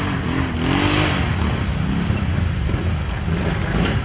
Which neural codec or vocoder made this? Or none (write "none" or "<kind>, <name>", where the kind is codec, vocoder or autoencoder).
none